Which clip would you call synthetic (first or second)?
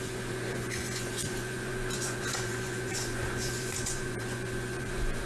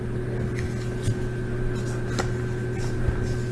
first